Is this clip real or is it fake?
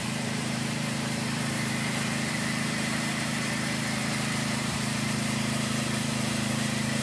fake